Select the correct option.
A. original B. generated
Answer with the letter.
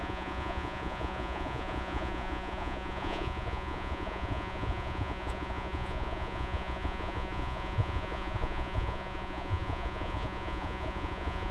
B